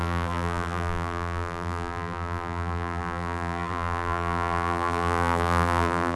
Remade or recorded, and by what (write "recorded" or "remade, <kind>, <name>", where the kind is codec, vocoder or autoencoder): remade, vocoder, BigVGAN v2